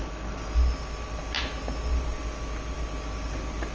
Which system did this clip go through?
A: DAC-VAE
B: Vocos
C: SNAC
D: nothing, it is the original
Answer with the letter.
D